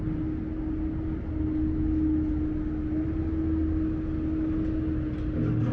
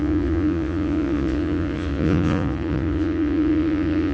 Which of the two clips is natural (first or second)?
first